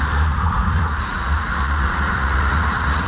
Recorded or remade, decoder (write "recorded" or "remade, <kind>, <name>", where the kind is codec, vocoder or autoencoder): remade, vocoder, Vocos